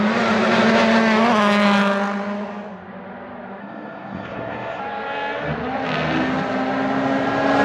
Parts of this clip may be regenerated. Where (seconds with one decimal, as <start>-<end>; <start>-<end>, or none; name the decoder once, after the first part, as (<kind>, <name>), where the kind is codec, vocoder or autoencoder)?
3.6-4.8 (codec, SNAC)